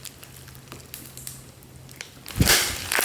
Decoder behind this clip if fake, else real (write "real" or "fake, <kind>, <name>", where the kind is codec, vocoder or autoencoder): real